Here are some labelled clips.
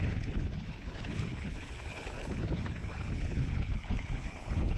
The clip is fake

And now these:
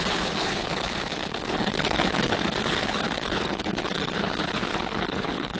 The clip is fake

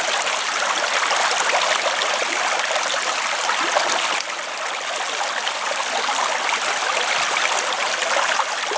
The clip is real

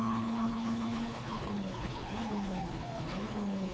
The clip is fake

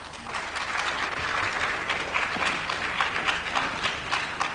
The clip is real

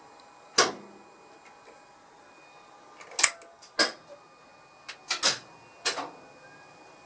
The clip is real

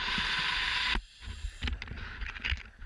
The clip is real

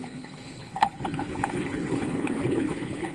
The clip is fake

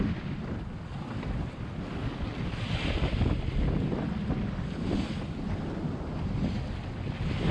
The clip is real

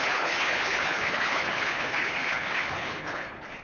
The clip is fake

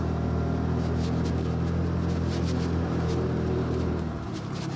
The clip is real